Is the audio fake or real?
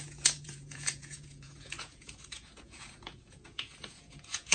fake